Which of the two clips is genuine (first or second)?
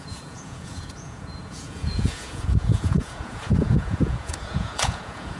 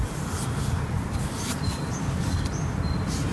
second